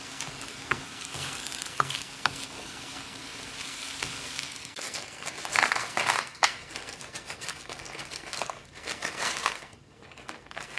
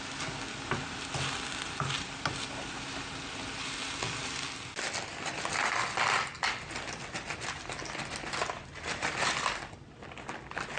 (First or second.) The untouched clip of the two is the second